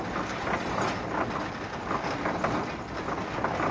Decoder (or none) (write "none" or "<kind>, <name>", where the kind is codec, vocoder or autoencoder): none